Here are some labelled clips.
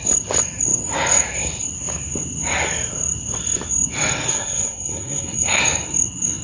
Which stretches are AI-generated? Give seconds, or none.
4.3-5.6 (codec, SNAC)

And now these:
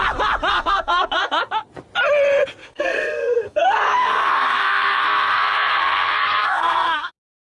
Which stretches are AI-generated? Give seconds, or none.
0.5-1.4 (codec, SNAC); 2.6-7.1

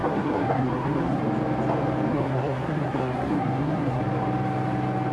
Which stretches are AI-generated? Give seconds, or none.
0.0-1.2 (codec, SNAC); 2.1-4.0

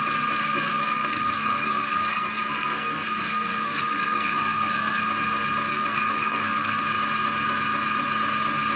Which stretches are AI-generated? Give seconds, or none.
0.4-5.0 (codec, SNAC); 5.7-6.8

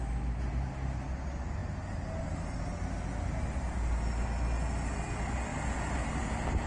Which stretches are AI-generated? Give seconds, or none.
none